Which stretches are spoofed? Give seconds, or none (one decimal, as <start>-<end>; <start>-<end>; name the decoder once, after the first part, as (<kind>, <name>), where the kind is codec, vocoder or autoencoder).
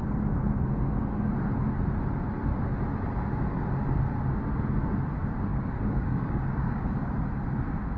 5.5-7.1 (codec, DAC)